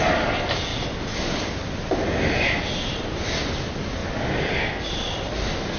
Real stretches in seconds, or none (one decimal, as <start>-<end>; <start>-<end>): 0.0-5.8